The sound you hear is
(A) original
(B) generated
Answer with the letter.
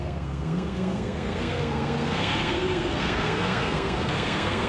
B